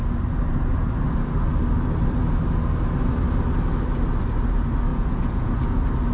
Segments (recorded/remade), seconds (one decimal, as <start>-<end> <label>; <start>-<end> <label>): 0.0-4.9 recorded; 4.9-5.5 remade; 5.5-6.1 recorded